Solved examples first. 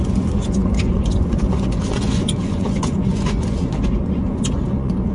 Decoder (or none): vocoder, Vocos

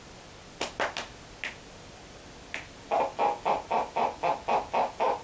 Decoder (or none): none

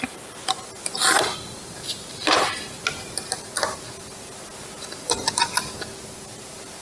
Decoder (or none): none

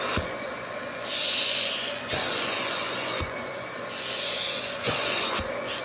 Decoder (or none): vocoder, Vocos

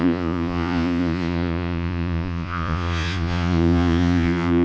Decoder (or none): vocoder, Vocos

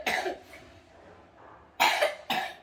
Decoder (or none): none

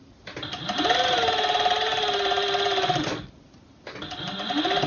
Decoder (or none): none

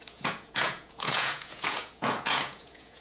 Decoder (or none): vocoder, Vocos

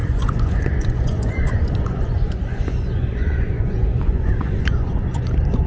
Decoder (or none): vocoder, Vocos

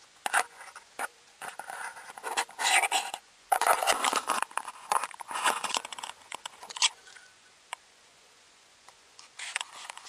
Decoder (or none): vocoder, Vocos